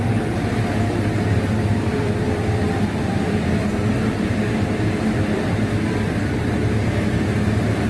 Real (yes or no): no